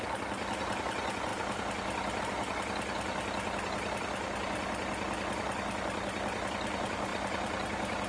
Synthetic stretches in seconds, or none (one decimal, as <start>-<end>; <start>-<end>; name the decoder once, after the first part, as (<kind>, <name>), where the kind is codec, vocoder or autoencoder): none